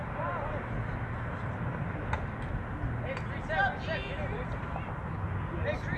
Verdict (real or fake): real